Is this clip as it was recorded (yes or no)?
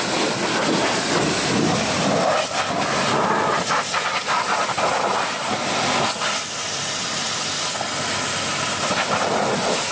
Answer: yes